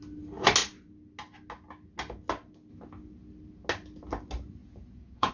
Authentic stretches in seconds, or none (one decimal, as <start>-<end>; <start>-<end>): 0.0-4.6